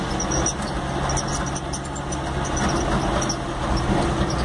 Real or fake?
real